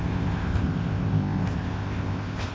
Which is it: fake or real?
fake